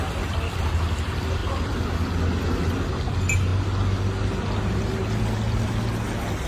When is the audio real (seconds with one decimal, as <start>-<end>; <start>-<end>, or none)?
0.0-6.5